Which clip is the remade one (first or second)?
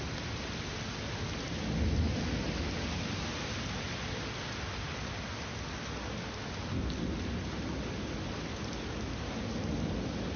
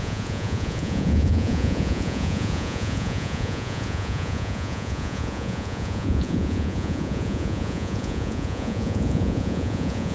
second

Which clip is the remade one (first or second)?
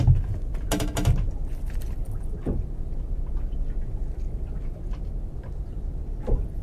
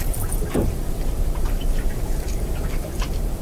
second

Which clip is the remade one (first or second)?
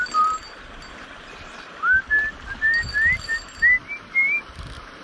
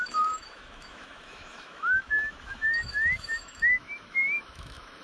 second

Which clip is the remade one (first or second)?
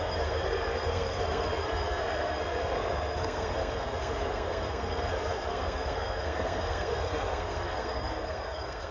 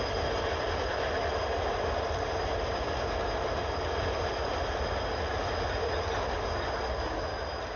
first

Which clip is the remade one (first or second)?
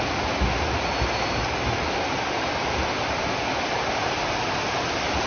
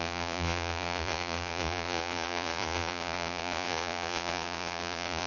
second